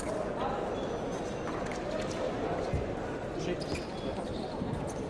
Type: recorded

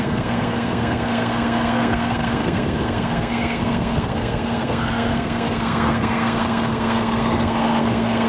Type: remade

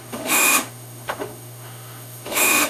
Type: remade